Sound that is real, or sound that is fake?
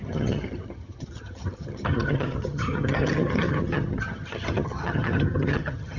fake